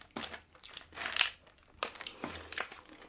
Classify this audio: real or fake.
real